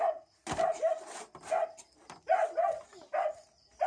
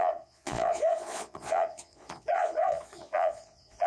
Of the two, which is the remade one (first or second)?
second